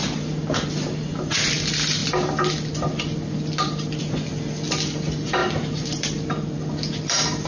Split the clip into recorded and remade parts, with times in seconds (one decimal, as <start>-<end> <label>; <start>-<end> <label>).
0.0-7.5 recorded